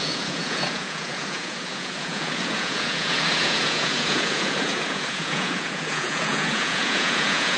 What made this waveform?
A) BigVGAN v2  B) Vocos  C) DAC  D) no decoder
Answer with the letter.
B